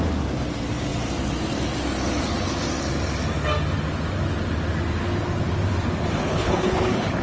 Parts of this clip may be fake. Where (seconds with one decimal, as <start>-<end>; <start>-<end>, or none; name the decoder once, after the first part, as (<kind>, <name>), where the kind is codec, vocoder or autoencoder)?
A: 6.2-7.2 (codec, HILCodec)